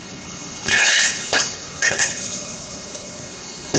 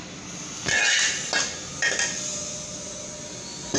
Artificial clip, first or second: first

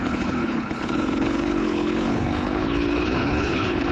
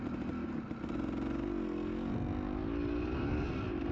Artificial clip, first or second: first